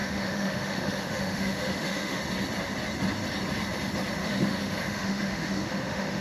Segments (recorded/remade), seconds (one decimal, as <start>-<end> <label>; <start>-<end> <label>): 0.0-2.2 remade; 2.2-4.2 recorded; 4.2-6.2 remade